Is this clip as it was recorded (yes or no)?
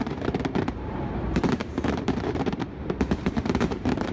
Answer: no